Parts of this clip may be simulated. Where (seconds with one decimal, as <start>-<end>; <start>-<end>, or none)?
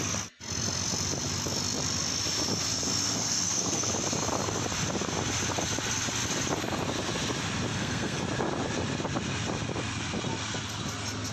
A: 3.1-3.9; 7.7-8.2